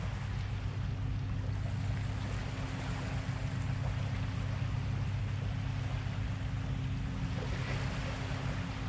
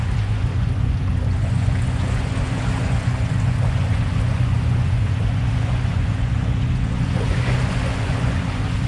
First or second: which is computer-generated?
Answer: second